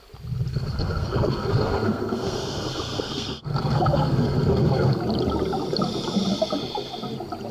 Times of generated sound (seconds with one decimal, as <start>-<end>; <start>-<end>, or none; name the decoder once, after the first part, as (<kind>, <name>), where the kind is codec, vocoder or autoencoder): 0.5-5.0 (codec, SNAC)